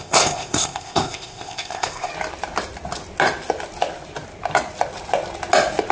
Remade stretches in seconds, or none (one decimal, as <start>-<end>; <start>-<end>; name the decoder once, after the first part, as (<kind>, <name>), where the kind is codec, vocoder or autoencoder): 0.0-2.1 (codec, ZipCodec)